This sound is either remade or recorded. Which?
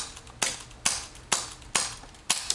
recorded